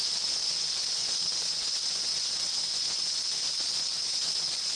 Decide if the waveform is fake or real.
fake